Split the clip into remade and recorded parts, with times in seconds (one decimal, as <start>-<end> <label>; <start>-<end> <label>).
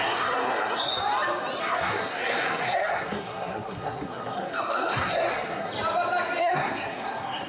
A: 0.0-0.9 remade; 0.9-1.6 recorded; 1.6-5.7 remade; 5.7-6.4 recorded; 6.4-7.5 remade